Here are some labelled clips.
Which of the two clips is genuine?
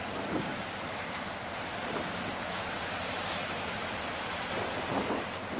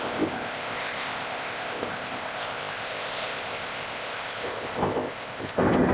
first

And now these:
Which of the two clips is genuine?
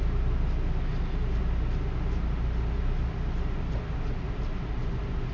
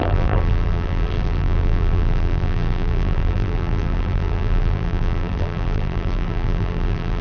first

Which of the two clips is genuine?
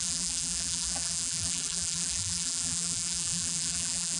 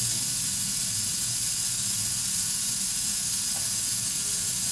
second